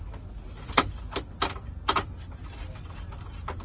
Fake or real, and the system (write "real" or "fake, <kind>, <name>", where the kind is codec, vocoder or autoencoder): real